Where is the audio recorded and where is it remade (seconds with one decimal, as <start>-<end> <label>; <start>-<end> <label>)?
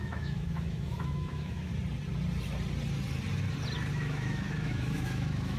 0.0-1.7 remade; 1.7-3.9 recorded; 3.9-5.6 remade